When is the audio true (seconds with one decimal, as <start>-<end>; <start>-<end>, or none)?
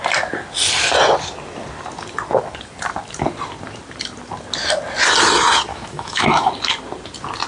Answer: 0.0-5.7; 6.5-7.5